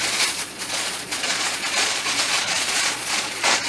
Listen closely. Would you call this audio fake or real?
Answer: fake